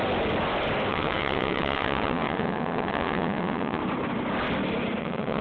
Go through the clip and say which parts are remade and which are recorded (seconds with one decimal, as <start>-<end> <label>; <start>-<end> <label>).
0.0-0.9 recorded; 0.9-3.8 remade; 3.8-5.0 recorded; 5.0-5.4 remade